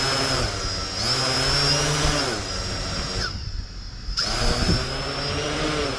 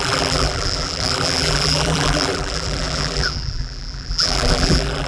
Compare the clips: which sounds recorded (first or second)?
first